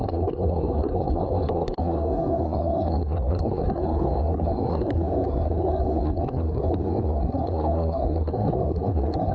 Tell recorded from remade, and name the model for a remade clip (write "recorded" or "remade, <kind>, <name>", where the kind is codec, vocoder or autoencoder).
remade, codec, SNAC